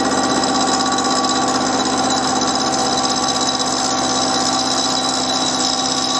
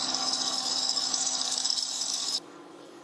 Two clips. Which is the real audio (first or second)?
first